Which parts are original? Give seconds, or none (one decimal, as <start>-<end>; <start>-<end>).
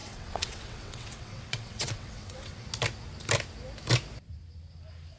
2.7-5.2